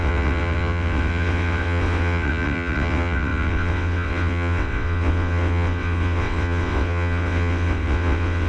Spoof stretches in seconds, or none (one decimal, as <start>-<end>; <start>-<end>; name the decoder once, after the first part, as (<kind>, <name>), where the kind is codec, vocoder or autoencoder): 0.0-8.5 (vocoder, WaveNeXt)